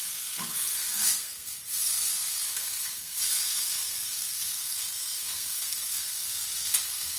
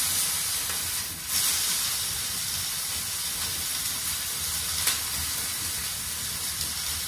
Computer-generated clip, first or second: first